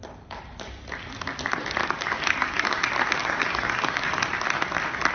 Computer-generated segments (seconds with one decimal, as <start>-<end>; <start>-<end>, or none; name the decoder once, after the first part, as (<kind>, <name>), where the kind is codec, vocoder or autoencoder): 1.8-2.8 (codec, DAC); 3.2-4.2